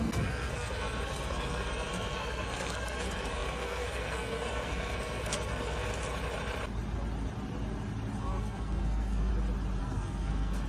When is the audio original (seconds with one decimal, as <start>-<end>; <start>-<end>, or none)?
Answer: 5.9-8.2; 9.3-9.8